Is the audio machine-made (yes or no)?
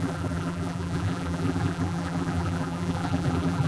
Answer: yes